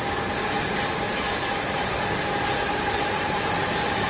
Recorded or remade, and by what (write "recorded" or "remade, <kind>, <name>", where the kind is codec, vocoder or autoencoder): remade, vocoder, BigVGAN v2